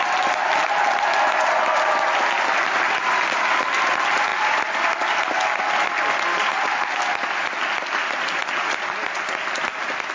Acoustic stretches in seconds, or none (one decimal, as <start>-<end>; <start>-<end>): 0.0-10.1